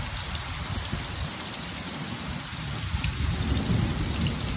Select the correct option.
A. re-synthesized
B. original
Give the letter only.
B